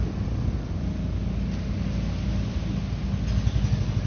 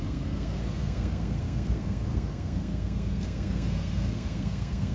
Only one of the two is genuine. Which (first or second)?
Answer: first